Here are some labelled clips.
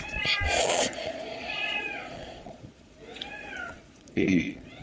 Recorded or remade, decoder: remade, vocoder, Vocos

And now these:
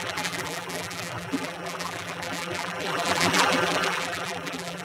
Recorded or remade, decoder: remade, vocoder, BigVGAN v2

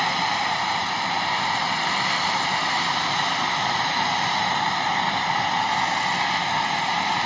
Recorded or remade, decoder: recorded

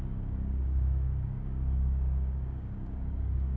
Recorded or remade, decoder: remade, codec, DAC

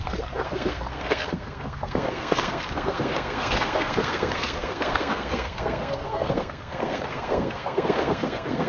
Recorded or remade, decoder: remade, codec, SNAC